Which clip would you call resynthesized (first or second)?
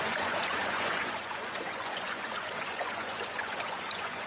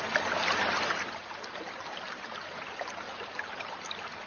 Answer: first